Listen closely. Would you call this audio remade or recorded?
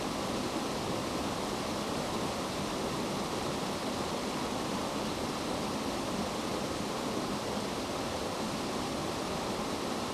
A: recorded